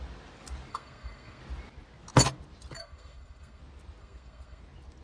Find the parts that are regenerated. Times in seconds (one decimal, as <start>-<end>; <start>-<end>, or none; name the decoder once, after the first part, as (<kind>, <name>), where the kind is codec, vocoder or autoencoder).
0.7-1.4 (codec, SNAC); 2.8-3.6; 4.0-4.6